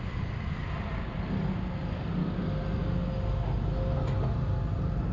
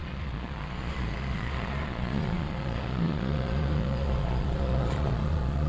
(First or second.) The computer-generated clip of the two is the second